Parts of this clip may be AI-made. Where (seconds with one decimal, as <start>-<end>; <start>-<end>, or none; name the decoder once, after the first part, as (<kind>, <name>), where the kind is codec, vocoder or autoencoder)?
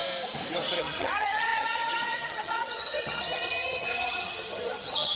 0.8-5.2 (vocoder, HiFi-GAN)